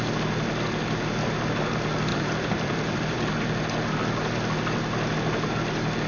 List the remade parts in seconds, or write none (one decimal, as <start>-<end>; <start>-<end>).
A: 2.1-3.3